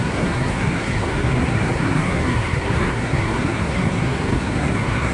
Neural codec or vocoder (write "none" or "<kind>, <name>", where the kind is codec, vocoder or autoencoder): codec, SNAC